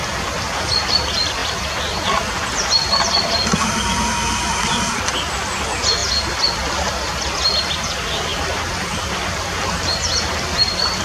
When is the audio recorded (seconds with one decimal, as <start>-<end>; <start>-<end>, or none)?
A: 0.0-8.3